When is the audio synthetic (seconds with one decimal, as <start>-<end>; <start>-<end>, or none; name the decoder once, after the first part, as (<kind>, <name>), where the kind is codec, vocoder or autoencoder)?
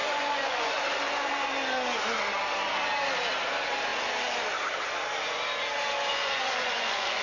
0.0-0.8 (vocoder, Vocos); 6.1-7.2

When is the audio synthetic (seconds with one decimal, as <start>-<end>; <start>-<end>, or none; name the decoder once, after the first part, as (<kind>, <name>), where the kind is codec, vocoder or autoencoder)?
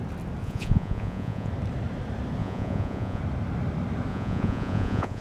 0.4-1.5 (vocoder, Vocos); 2.4-3.2; 4.1-5.2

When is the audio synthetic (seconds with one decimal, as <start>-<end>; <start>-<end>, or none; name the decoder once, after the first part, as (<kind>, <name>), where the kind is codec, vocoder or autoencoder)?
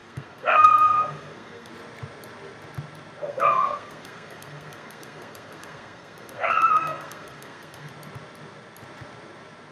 0.0-1.7 (codec, SNAC); 3.2-7.9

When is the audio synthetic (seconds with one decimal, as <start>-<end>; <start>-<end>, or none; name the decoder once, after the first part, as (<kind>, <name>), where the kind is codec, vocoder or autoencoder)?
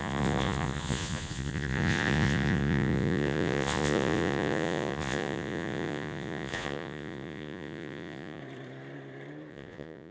0.0-8.4 (vocoder, Vocos); 9.5-10.1